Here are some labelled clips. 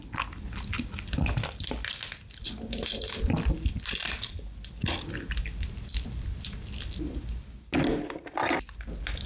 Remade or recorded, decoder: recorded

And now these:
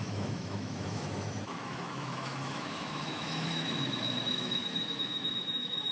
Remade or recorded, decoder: remade, autoencoder, DAC-VAE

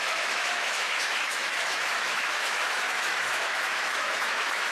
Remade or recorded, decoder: remade, autoencoder, DAC-VAE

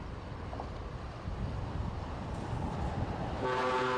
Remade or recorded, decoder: recorded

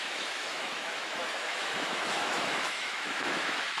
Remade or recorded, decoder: remade, autoencoder, DAC-VAE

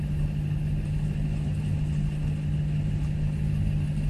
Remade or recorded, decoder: recorded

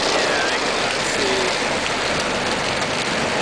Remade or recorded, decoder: recorded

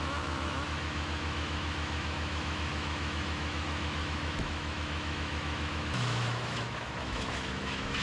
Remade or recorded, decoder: remade, autoencoder, DAC-VAE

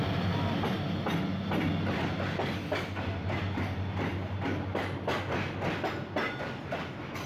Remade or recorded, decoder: recorded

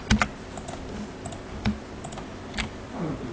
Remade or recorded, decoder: recorded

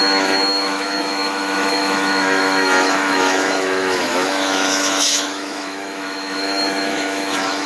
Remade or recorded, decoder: remade, autoencoder, DAC-VAE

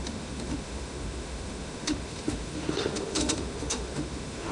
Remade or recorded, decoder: remade, autoencoder, DAC-VAE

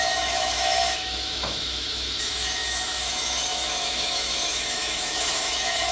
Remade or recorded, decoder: remade, autoencoder, DAC-VAE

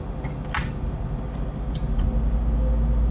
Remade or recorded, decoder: recorded